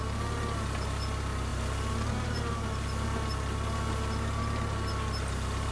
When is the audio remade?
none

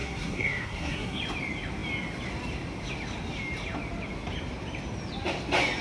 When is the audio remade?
0.0-1.2 (codec, SNAC)

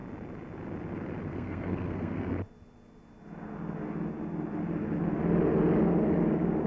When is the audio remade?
1.3-2.3 (codec, SNAC)

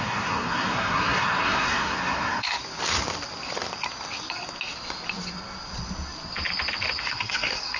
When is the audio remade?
0.0-2.6 (codec, SNAC); 7.0-7.8

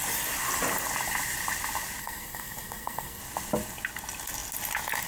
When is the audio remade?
2.0-3.2 (codec, SNAC)

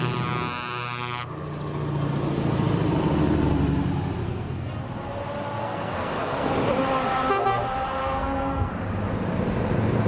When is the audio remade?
4.2-4.7 (codec, SNAC); 5.6-6.5; 8.0-8.7

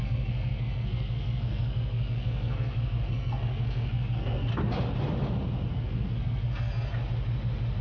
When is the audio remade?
0.0-4.5 (codec, SNAC); 5.7-6.9